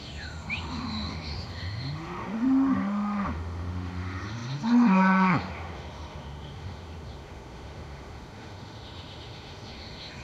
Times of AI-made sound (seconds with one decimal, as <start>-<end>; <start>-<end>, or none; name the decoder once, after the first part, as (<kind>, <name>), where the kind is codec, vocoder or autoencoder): 0.0-10.2 (autoencoder, DAC-VAE)